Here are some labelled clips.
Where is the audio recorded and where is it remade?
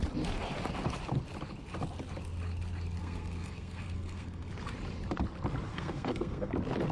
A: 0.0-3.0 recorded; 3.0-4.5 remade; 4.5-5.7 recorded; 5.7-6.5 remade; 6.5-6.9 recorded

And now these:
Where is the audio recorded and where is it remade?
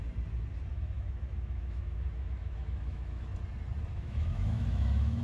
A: 0.0-0.7 recorded; 0.7-3.3 remade; 3.3-3.9 recorded; 3.9-5.2 remade